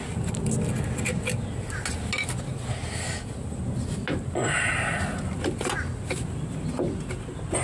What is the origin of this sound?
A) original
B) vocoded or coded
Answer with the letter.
A